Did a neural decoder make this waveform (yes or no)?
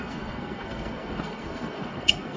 yes